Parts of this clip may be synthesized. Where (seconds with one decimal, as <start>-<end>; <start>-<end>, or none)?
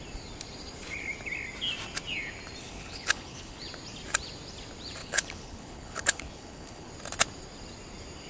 2.6-3.6; 5.0-6.9